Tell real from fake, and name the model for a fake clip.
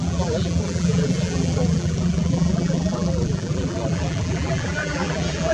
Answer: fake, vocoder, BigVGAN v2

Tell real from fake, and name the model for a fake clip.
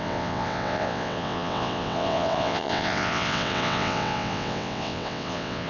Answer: fake, vocoder, WaveNeXt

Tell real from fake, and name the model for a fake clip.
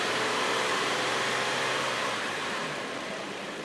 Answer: fake, vocoder, BigVGAN v2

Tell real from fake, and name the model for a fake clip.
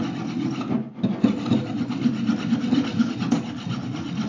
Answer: real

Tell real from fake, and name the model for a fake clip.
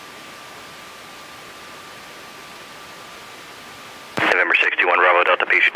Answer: real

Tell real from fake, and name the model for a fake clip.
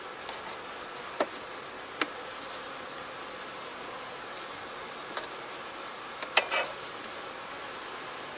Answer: real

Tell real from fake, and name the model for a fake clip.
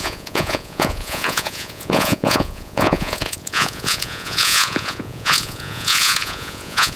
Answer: fake, vocoder, Vocos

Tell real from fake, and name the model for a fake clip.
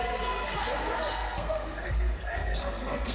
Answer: fake, codec, SNAC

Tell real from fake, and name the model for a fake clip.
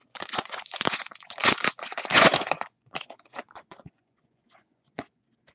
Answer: fake, vocoder, Vocos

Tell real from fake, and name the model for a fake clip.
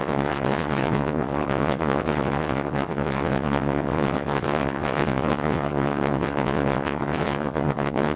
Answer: fake, vocoder, WaveNeXt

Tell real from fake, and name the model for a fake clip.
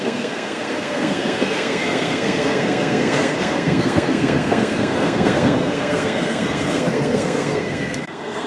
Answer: fake, codec, SNAC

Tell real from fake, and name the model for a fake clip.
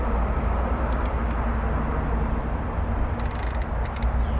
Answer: real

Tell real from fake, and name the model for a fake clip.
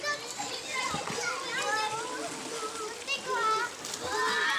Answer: real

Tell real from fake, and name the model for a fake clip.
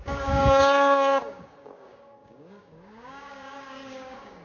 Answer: fake, codec, DAC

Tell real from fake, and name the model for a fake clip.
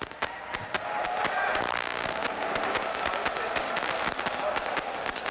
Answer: real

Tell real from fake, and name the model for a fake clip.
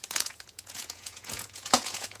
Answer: fake, vocoder, Vocos